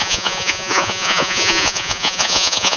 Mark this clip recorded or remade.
remade